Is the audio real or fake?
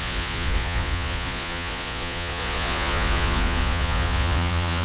fake